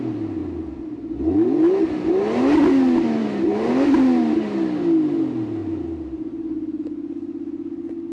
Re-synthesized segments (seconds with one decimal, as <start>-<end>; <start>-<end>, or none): 0.4-1.9; 5.6-6.2